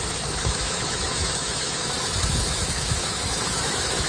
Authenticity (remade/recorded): remade